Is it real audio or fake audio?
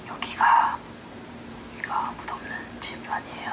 real